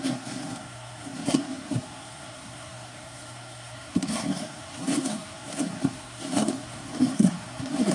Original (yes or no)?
no